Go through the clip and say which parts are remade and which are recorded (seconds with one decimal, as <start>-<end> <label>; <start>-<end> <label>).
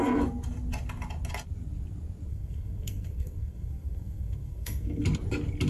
0.0-2.3 recorded; 2.3-5.0 remade; 5.0-5.7 recorded